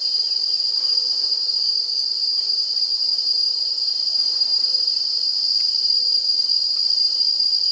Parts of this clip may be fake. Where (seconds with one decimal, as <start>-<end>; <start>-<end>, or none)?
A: none